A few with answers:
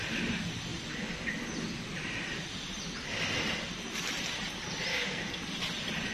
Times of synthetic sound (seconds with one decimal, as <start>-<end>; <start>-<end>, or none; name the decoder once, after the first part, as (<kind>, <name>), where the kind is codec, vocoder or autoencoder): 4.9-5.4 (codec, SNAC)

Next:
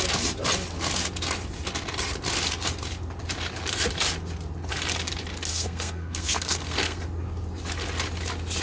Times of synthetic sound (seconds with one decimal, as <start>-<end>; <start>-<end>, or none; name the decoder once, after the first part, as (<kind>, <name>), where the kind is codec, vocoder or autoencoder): 5.5-7.0 (codec, SNAC)

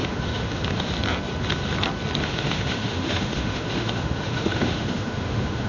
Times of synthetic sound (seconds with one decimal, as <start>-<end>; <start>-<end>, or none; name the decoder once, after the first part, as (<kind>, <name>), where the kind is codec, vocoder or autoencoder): 0.0-0.9 (autoencoder, DAC-VAE); 2.2-5.7

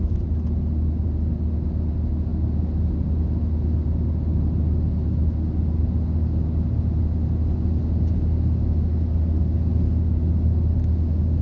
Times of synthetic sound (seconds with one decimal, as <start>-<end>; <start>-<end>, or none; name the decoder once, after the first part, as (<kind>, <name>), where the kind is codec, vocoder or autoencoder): none

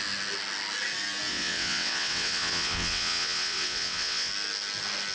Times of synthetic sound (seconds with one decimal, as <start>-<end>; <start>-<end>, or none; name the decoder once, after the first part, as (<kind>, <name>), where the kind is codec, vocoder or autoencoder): 1.3-4.3 (vocoder, WaveNeXt)